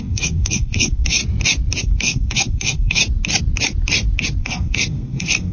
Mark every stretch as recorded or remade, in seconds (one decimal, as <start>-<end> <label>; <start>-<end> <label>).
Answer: 0.0-1.2 remade; 1.2-1.8 recorded; 1.8-3.0 remade; 3.0-4.4 recorded; 4.4-5.5 remade